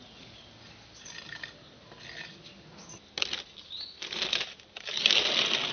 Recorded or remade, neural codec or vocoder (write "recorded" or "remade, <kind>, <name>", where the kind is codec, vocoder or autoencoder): recorded